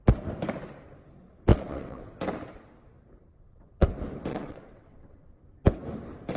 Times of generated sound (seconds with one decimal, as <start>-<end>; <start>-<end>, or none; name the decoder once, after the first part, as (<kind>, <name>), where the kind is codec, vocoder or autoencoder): 1.5-2.1 (vocoder, WaveNeXt); 3.3-3.9; 4.3-5.4